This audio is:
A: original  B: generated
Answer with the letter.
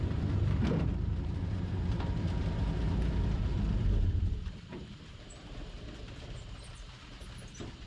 B